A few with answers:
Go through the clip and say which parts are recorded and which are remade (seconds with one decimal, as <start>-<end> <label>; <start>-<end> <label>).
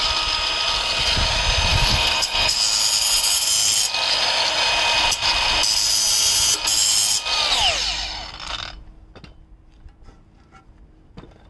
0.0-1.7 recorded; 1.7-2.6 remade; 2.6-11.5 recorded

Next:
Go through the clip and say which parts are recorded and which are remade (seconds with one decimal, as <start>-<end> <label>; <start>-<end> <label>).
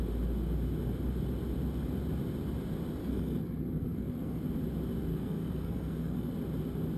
0.0-3.0 recorded; 3.0-4.4 remade; 4.4-5.1 recorded; 5.1-6.3 remade; 6.3-7.0 recorded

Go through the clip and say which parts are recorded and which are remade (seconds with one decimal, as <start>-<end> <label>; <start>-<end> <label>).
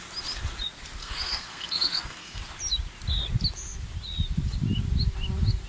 0.0-1.0 recorded; 1.0-2.4 remade; 2.4-5.7 recorded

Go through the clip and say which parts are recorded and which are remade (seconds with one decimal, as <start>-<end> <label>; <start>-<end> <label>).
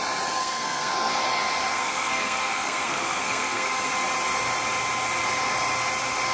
0.0-0.4 recorded; 0.4-1.1 remade; 1.1-1.7 recorded; 1.7-3.9 remade; 3.9-6.3 recorded